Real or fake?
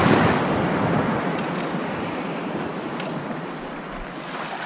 real